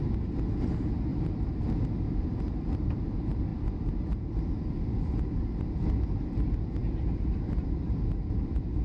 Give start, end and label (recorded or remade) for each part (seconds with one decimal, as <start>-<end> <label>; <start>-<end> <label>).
0.0-1.1 recorded; 1.1-2.4 remade; 2.4-8.8 recorded